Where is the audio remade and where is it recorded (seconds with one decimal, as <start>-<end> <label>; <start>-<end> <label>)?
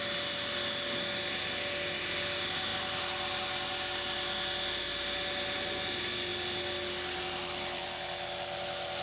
0.0-9.0 recorded